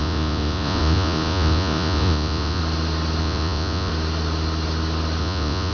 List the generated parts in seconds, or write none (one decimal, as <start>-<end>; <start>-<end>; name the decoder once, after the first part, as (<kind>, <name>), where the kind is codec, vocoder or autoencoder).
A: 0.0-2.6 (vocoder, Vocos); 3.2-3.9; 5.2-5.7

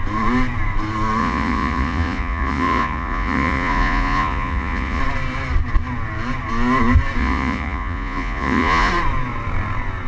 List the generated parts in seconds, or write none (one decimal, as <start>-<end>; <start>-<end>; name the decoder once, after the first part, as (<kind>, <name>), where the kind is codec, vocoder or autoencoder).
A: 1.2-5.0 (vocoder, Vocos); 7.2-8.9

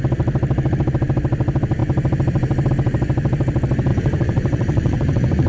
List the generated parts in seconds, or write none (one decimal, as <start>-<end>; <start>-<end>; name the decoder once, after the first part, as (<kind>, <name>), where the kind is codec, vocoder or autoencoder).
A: 3.9-5.5 (vocoder, Vocos)

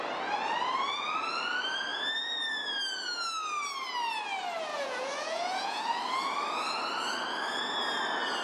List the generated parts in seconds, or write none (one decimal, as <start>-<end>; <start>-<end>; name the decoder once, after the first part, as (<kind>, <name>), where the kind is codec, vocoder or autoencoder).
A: 4.7-5.8 (vocoder, Vocos)

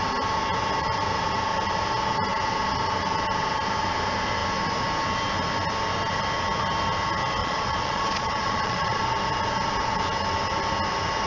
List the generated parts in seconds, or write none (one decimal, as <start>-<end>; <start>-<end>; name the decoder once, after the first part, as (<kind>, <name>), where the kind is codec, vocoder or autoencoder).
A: 7.4-9.0 (vocoder, Vocos)

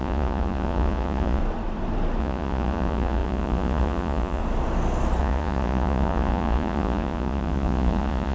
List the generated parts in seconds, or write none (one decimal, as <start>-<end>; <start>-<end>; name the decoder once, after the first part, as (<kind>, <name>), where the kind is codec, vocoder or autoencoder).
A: 0.0-1.4 (vocoder, Vocos); 2.2-4.4; 5.2-8.3

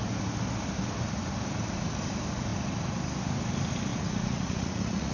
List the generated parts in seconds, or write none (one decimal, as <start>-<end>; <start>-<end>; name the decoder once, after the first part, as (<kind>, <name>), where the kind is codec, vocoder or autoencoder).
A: 3.9-5.1 (vocoder, Vocos)

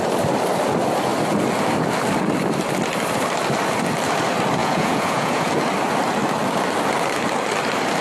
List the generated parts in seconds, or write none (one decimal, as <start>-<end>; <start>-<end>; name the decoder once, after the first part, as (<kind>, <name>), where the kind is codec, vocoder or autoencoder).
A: 4.6-5.5 (vocoder, Vocos)